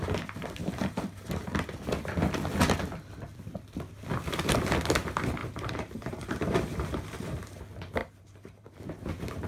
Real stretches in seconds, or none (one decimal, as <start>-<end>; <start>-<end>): 0.0-0.6; 1.3-5.4; 7.6-8.0; 8.8-9.5